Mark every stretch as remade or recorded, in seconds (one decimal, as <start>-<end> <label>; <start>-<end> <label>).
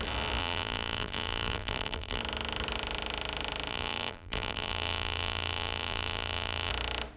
0.0-0.4 recorded; 0.4-2.2 remade; 2.2-3.7 recorded; 3.7-6.7 remade; 6.7-7.2 recorded